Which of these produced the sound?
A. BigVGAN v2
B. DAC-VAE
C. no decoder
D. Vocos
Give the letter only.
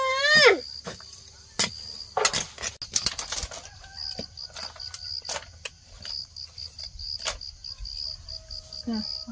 C